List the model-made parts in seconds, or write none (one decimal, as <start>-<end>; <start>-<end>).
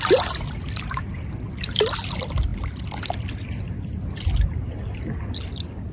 none